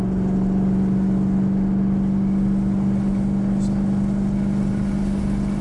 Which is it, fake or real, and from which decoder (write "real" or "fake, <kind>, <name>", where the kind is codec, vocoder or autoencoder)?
real